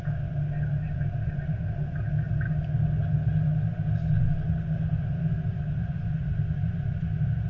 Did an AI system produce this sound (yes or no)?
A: no